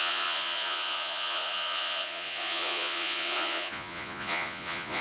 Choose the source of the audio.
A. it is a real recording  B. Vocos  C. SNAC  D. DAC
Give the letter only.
B